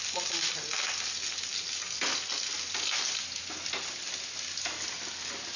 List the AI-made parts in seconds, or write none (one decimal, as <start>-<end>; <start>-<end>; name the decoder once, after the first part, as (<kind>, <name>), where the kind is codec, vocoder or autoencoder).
none